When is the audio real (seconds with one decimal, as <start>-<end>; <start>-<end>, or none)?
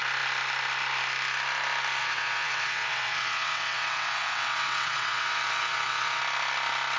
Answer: 0.0-2.0; 6.2-7.0